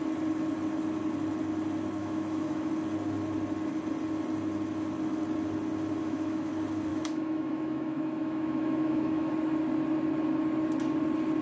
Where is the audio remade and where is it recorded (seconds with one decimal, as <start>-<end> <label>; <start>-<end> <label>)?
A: 0.0-2.0 recorded; 2.0-2.7 remade; 2.7-6.0 recorded; 6.0-6.5 remade; 6.5-6.9 recorded; 6.9-9.3 remade; 9.3-11.4 recorded